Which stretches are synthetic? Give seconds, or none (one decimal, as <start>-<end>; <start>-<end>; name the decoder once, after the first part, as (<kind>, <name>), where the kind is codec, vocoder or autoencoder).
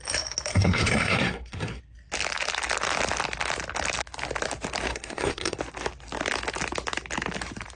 0.5-1.8 (codec, SNAC); 4.9-5.6